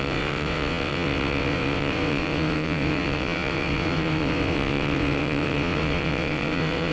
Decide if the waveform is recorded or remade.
remade